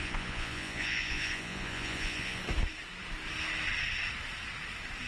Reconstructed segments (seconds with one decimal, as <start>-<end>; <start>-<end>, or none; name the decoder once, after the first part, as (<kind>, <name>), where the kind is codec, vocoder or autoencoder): 0.0-2.4 (vocoder, Vocos)